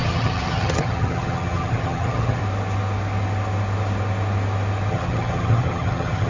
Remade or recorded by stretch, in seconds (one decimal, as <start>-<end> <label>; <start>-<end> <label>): 0.0-2.4 remade; 2.4-4.9 recorded; 4.9-6.3 remade